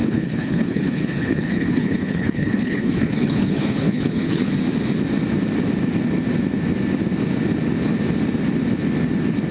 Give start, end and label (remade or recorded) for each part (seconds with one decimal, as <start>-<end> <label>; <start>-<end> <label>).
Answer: 0.0-4.5 remade; 4.5-9.5 recorded